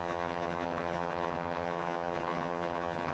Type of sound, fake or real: fake